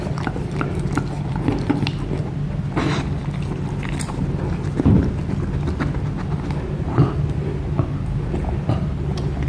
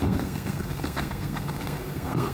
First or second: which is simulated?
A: second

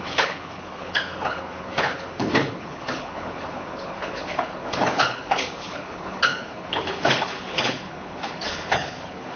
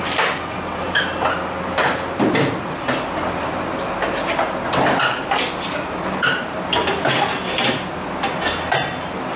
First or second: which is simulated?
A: first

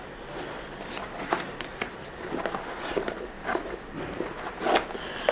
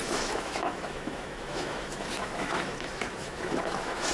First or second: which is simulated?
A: second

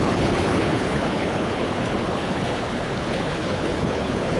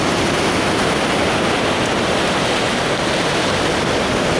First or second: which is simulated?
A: first